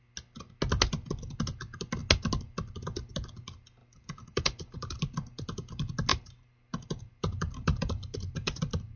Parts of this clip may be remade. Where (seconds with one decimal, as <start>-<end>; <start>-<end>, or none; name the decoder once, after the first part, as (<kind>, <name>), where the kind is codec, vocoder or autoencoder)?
3.8-5.0 (vocoder, BigVGAN v2); 6.1-9.0